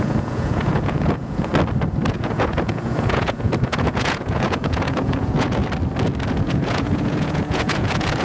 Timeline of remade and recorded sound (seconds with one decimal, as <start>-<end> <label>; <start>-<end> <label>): 0.0-1.5 remade; 1.5-2.1 recorded; 2.1-5.6 remade; 5.6-6.3 recorded; 6.3-8.2 remade